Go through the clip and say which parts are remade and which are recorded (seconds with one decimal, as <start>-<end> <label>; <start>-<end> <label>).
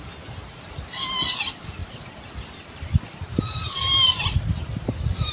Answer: 0.0-5.3 recorded